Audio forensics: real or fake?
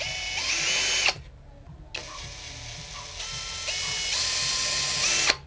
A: real